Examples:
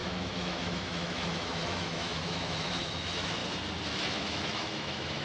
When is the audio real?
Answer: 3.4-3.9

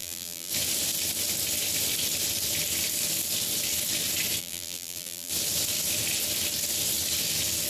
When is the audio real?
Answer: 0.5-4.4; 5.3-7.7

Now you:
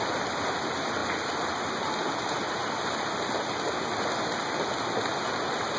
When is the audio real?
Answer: 0.0-5.8

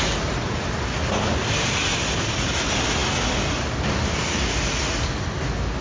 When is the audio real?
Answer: 0.0-5.8